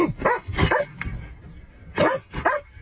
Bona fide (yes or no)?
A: yes